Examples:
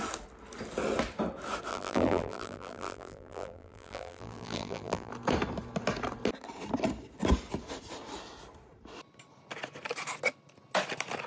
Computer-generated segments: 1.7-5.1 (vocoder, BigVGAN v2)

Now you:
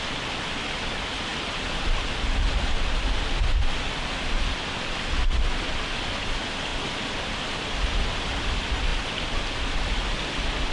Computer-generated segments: none

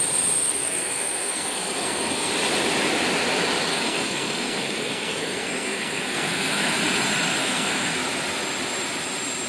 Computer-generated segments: 0.4-2.3 (codec, SNAC); 3.7-6.8; 7.4-8.0

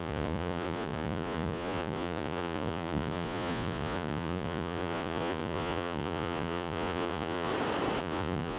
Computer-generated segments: 0.0-7.5 (vocoder, Vocos); 8.0-8.6

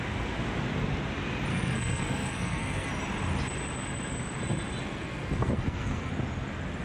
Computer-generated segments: 1.5-2.9 (codec, SNAC); 4.8-6.1

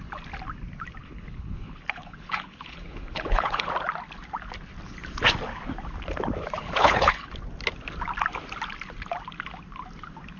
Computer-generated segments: 1.0-3.7 (codec, HILCodec); 6.6-7.3